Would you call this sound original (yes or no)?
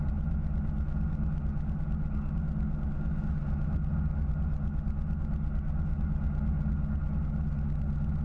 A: yes